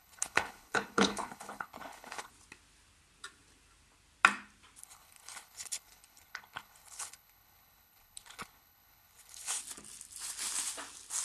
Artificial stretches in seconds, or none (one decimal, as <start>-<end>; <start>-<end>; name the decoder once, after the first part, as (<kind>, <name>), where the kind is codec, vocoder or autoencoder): 0.0-2.3 (codec, HILCodec); 4.8-9.6